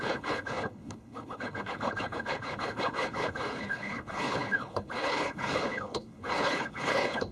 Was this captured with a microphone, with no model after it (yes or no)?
no